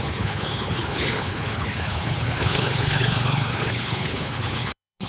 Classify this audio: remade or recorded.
remade